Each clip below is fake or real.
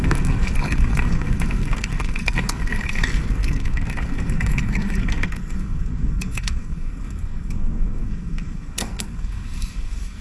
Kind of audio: fake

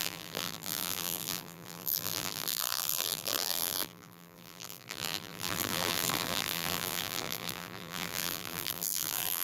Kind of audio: fake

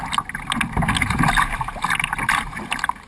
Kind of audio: real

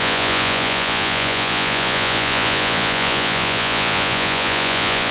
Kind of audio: fake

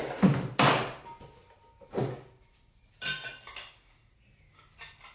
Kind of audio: real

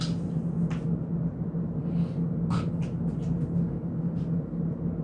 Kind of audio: real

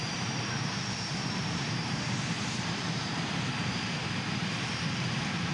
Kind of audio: fake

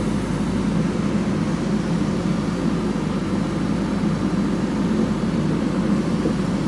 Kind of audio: real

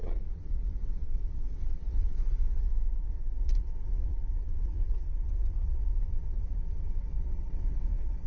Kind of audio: fake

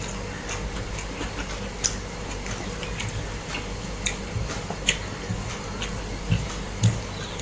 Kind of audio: real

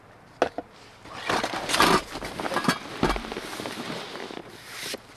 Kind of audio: real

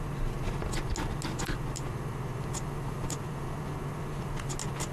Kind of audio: real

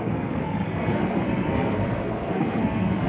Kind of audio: fake